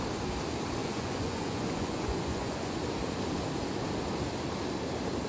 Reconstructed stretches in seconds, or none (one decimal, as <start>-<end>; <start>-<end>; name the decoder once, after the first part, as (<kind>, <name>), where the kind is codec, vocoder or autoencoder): 0.8-2.8 (vocoder, Vocos)